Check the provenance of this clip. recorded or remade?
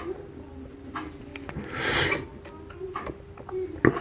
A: recorded